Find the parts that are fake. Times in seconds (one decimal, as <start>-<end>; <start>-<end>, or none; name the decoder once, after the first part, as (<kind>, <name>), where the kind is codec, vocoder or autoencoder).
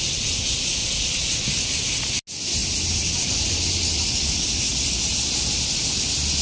0.8-1.3 (vocoder, Vocos)